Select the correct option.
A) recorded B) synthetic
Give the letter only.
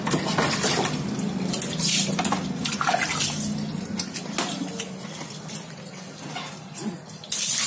A